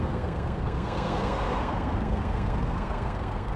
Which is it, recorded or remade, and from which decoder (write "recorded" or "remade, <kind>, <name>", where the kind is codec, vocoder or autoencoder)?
remade, codec, SNAC